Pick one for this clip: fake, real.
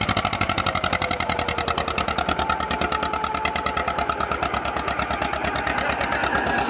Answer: real